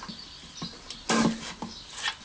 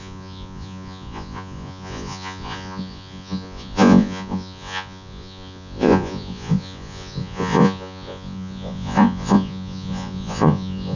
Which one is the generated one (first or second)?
second